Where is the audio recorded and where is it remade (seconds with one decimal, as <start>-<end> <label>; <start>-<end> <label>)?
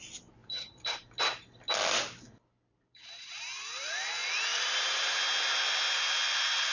0.0-0.4 recorded; 0.4-0.9 remade; 0.9-2.9 recorded; 2.9-4.1 remade; 4.1-4.5 recorded; 4.5-5.1 remade; 5.1-6.7 recorded